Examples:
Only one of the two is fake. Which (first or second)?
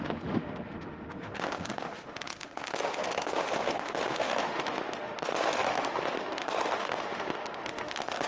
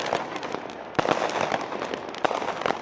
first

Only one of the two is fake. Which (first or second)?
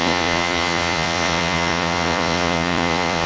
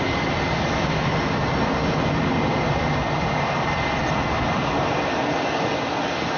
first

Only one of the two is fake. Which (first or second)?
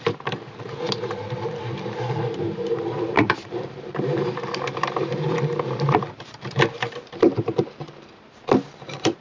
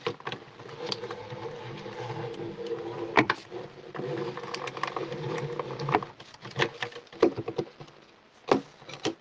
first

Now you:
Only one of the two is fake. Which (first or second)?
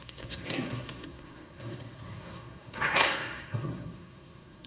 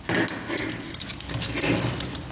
first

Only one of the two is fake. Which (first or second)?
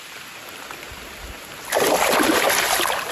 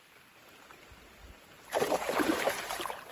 second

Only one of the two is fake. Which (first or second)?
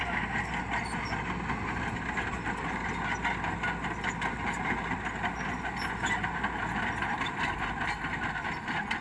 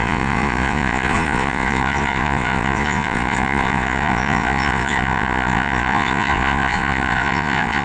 second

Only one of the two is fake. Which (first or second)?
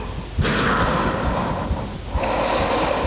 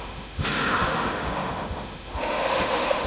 second